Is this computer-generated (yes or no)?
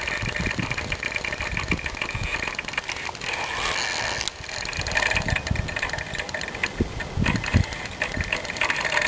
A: no